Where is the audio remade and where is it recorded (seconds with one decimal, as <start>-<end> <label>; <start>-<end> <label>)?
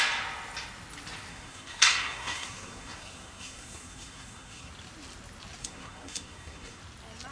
0.0-1.3 recorded; 1.3-4.7 remade; 4.7-5.6 recorded; 5.6-6.8 remade; 6.8-7.3 recorded